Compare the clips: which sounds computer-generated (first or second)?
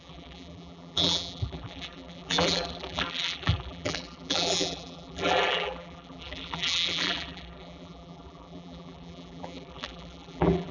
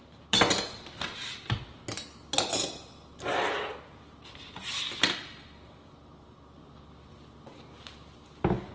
first